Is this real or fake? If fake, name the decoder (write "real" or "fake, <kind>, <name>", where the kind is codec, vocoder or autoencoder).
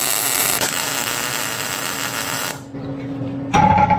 real